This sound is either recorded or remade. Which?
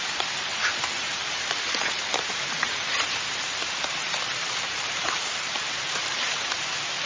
remade